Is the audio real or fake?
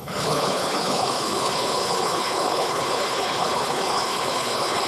fake